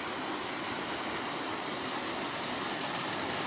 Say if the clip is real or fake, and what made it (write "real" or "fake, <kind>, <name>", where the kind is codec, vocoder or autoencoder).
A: real